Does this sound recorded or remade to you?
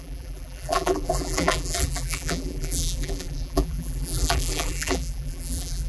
remade